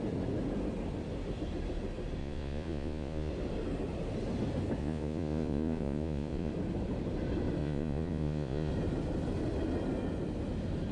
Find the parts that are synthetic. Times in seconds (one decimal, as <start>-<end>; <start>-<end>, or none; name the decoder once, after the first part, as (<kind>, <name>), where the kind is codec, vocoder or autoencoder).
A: 2.2-3.3 (vocoder, Vocos); 4.8-6.5; 7.6-8.7